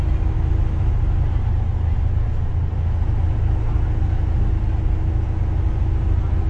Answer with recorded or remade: recorded